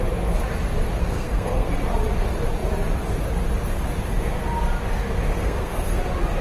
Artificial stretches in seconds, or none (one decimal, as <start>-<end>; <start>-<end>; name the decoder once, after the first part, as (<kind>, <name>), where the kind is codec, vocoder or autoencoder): 1.0-1.7 (codec, SNAC); 5.3-6.0